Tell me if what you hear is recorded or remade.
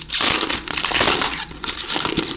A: recorded